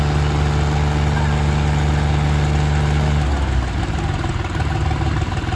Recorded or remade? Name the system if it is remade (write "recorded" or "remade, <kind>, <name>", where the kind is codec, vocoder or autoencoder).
recorded